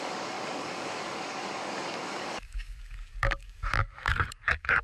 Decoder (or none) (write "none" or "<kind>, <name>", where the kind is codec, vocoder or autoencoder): codec, DAC